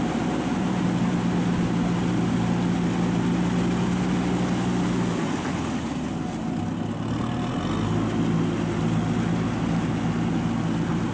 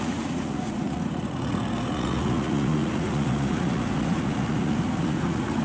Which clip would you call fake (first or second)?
second